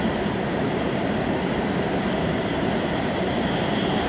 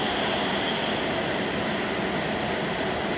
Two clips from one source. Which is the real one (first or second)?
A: second